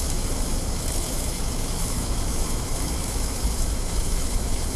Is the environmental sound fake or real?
fake